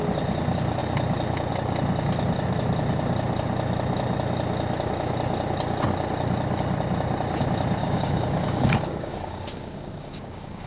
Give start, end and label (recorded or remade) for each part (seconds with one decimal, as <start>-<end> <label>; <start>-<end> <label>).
0.0-7.8 recorded; 7.8-10.7 remade